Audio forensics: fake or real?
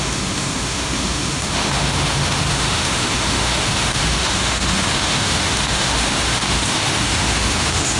fake